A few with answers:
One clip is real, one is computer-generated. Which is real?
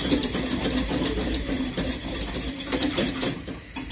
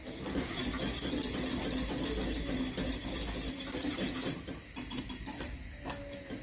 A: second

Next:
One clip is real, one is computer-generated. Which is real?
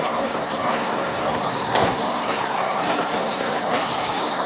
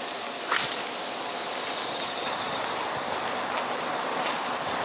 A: second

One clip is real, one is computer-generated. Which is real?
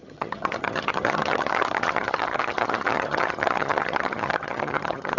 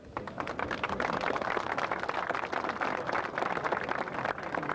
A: second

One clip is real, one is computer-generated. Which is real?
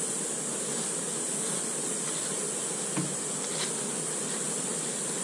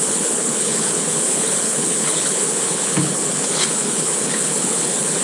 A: first